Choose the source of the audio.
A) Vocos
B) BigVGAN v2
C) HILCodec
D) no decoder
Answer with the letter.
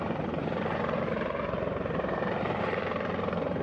B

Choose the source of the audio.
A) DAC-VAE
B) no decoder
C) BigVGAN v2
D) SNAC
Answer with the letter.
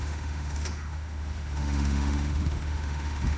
A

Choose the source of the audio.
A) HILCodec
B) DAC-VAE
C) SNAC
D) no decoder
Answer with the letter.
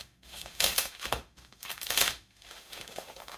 B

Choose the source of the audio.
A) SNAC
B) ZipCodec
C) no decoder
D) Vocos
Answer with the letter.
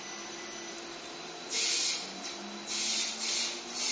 C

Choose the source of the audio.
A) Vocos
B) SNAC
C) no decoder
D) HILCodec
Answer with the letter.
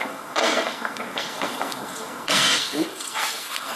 B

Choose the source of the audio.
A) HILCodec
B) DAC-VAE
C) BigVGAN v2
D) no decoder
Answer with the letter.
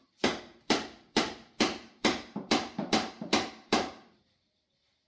C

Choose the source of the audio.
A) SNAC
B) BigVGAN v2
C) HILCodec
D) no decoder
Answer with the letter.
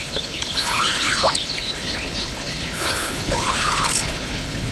C